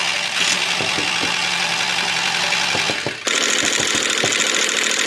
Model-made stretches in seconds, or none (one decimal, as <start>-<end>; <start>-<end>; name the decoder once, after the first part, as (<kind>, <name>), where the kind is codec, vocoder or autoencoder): none